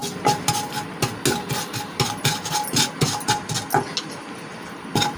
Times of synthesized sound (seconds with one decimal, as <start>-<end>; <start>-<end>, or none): none